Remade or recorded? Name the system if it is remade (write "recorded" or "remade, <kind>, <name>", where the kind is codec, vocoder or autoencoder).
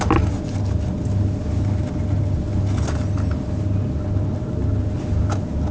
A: recorded